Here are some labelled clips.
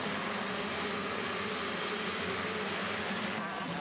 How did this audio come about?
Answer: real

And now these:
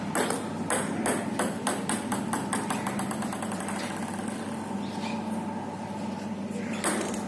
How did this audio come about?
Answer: real